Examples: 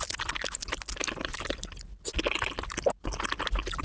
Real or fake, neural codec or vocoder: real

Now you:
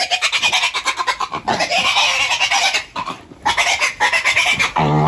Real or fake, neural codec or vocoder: real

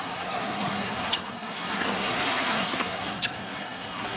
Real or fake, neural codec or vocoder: fake, codec, SNAC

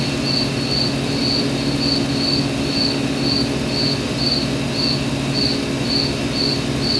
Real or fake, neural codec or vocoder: real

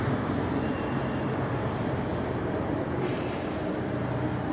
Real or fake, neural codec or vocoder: real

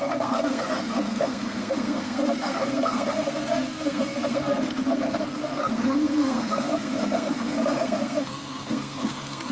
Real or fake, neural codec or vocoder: fake, codec, SNAC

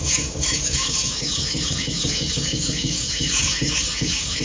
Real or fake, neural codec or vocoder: fake, codec, DAC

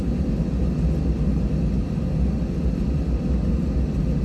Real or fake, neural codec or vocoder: real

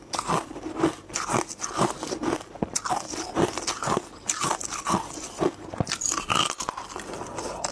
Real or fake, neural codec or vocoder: real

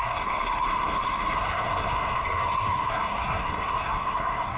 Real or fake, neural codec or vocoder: fake, codec, SNAC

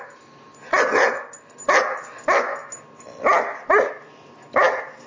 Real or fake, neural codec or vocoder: real